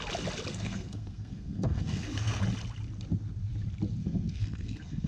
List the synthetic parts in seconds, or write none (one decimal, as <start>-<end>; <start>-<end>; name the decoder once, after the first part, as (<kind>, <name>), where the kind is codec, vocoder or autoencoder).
0.5-2.4 (codec, SNAC); 4.0-5.1